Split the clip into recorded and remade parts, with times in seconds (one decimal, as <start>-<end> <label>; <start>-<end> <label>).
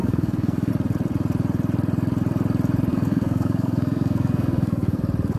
0.0-0.7 remade; 0.7-2.9 recorded; 2.9-5.0 remade; 5.0-5.4 recorded